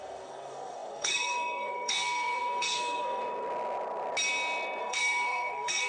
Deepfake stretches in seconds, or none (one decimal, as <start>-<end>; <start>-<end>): 0.0-3.2; 4.8-5.9